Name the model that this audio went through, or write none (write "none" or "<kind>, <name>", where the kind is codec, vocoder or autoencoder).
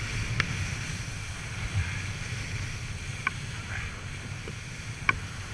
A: none